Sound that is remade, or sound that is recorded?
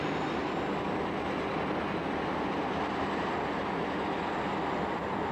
recorded